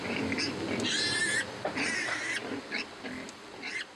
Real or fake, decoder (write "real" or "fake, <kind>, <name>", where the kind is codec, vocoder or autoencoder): real